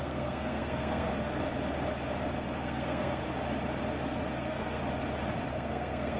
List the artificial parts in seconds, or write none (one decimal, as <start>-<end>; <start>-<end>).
0.0-1.1; 2.6-3.2; 4.3-4.8; 5.5-6.2